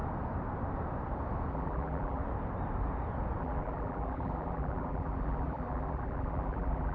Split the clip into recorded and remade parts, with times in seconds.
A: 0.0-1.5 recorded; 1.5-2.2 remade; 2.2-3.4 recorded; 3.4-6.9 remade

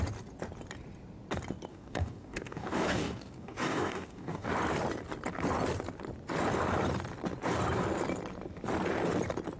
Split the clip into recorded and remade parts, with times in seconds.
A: 0.0-1.7 recorded; 1.7-4.5 remade; 4.5-9.6 recorded